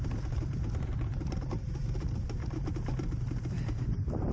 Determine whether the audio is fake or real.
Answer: fake